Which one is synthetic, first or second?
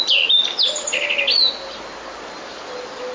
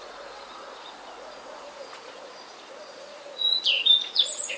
second